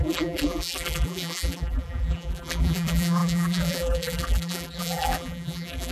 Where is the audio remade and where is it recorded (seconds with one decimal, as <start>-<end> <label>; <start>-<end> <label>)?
0.0-5.9 remade